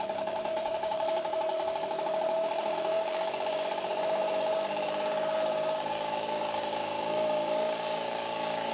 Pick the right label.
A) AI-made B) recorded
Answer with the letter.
A